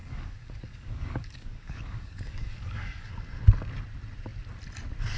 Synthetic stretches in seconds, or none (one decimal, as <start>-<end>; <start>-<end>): 0.0-3.1